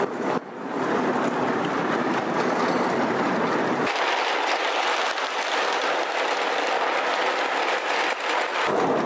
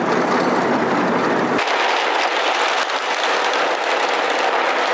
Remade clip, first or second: first